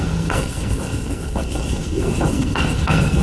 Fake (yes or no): yes